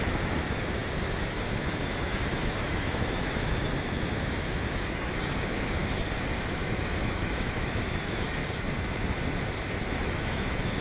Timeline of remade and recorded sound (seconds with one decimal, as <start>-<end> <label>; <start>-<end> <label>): 0.0-5.8 remade; 5.8-6.4 recorded; 6.4-8.4 remade; 8.4-9.9 recorded; 9.9-10.8 remade